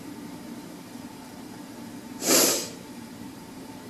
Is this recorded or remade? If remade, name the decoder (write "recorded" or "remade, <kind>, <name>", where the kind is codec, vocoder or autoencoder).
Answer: remade, vocoder, BigVGAN v2